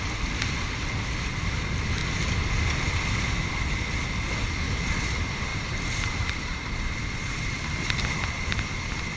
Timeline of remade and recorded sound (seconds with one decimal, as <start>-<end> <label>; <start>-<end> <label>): 0.0-5.5 recorded; 5.5-8.0 remade; 8.0-9.2 recorded